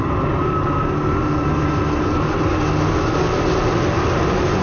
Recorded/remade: recorded